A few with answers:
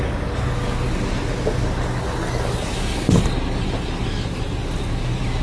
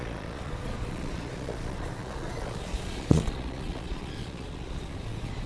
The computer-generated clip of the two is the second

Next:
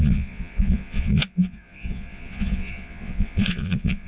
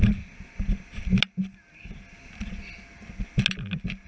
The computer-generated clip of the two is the first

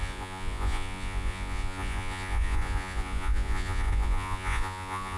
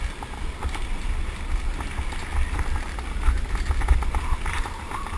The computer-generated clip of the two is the first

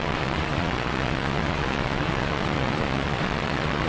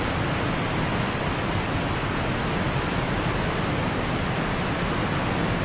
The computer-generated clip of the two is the first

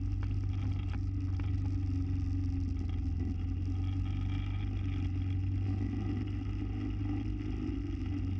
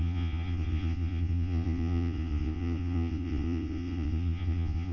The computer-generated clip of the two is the second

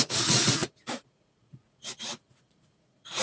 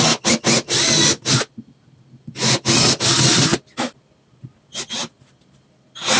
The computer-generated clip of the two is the first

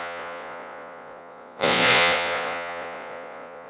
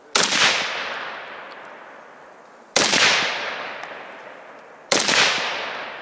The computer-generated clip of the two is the first